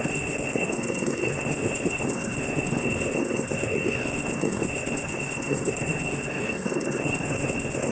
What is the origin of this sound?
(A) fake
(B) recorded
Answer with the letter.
A